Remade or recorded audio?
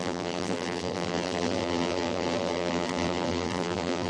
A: remade